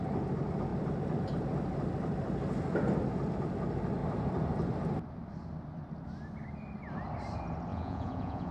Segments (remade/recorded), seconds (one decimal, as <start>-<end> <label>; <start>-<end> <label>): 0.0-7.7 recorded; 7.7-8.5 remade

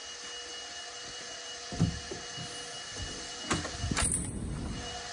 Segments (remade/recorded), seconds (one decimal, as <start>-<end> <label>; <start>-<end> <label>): 0.0-5.1 recorded

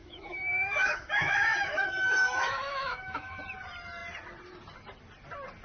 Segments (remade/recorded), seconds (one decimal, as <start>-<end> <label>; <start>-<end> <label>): 0.0-3.4 remade; 3.4-5.6 recorded

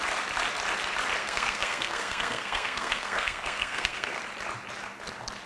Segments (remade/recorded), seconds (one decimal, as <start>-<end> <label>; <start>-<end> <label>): 0.0-1.2 recorded; 1.2-4.2 remade; 4.2-5.5 recorded

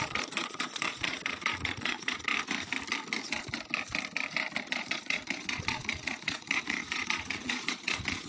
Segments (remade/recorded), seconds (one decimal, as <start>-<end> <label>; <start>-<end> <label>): 0.0-2.3 remade; 2.3-4.7 recorded; 4.7-8.3 remade